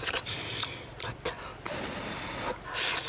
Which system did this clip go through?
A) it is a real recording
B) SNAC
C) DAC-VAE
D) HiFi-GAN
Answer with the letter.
A